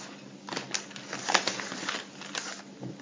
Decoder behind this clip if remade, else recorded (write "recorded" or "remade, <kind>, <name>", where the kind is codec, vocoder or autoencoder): recorded